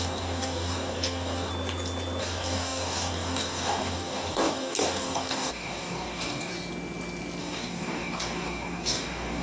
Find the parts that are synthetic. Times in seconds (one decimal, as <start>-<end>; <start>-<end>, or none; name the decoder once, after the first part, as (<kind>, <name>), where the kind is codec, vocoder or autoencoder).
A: 0.0-1.5 (codec, DAC); 2.2-6.5; 7.4-9.4